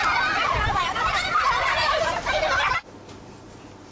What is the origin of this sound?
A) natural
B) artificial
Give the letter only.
A